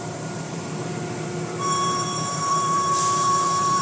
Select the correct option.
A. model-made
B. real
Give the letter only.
A